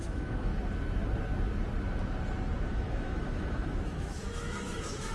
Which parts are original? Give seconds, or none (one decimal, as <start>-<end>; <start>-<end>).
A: 0.5-2.7